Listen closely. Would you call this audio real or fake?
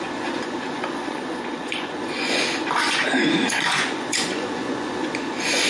fake